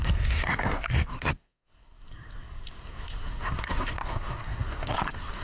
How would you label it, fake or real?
fake